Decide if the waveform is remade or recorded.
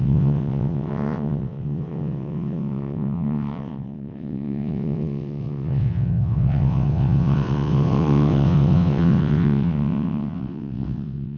remade